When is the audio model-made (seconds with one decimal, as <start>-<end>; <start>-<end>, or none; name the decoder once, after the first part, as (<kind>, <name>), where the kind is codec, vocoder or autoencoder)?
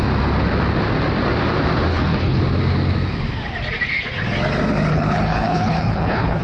1.9-2.4 (codec, HILCodec); 4.9-6.4